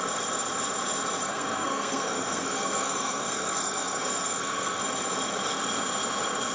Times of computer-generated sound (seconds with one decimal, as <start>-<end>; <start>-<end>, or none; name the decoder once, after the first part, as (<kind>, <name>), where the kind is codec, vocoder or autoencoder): 1.3-4.8 (codec, SNAC)